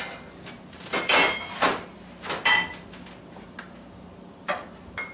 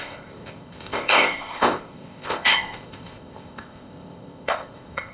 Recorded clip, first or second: first